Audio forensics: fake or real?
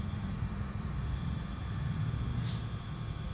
fake